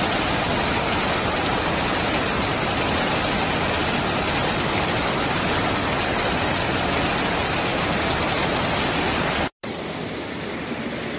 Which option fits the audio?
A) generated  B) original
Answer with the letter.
B